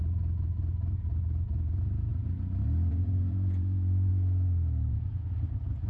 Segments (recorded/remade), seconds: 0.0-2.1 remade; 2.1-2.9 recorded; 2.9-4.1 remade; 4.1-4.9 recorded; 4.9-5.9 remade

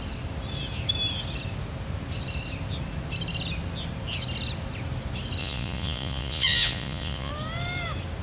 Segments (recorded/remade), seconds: 0.0-5.4 recorded; 5.4-7.3 remade; 7.3-8.2 recorded